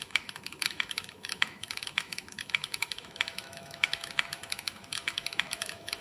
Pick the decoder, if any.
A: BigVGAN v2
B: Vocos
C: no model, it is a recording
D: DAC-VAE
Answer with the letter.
D